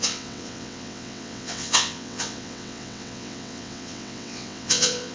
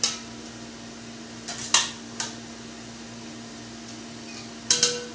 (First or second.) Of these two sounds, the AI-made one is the first